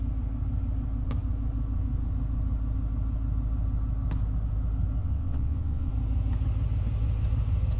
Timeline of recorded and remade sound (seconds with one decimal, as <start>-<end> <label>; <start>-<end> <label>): 0.0-5.0 recorded; 5.0-5.9 remade; 5.9-7.8 recorded

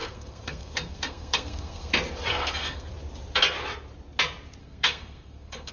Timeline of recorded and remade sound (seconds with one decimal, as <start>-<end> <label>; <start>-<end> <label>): 0.0-1.9 remade; 1.9-2.3 recorded; 2.3-2.9 remade; 2.9-4.6 recorded; 4.6-5.7 remade

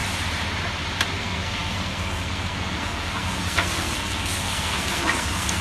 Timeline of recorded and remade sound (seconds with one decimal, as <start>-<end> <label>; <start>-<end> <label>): 0.0-1.2 recorded; 1.2-5.6 remade

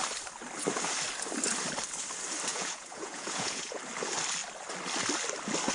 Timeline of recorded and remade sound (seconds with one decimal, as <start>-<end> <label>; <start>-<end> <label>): 0.0-2.5 recorded; 2.5-3.8 remade; 3.8-5.7 recorded

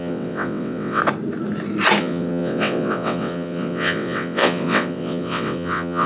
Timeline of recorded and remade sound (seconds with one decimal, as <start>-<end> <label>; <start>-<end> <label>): 0.0-1.0 remade; 1.0-2.0 recorded; 2.0-6.1 remade

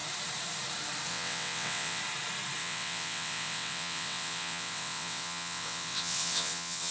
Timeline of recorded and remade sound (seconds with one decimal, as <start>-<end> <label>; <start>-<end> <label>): 0.0-1.1 recorded; 1.1-2.0 remade; 2.0-2.6 recorded; 2.6-6.9 remade

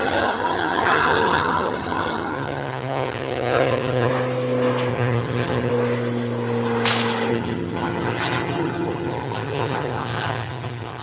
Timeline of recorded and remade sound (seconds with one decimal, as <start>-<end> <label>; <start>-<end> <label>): 0.0-4.1 remade; 4.1-4.9 recorded; 4.9-5.7 remade; 5.7-7.3 recorded; 7.3-11.0 remade